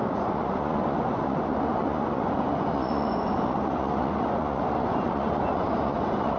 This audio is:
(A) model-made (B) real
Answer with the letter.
A